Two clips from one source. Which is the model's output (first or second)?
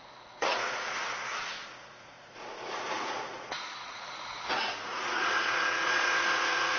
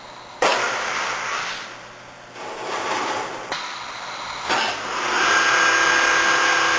first